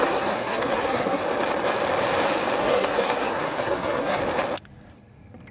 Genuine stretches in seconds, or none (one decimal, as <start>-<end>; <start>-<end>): 1.2-2.6; 4.2-5.5